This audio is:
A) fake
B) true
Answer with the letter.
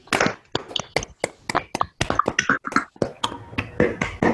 B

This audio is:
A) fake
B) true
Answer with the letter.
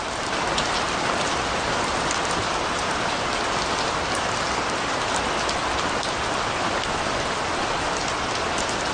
B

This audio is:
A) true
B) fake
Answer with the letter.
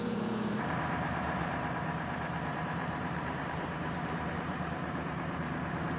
B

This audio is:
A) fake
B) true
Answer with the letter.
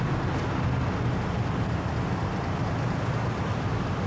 B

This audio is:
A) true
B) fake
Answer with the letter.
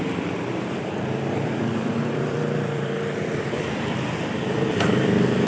B